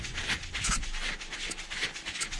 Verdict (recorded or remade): recorded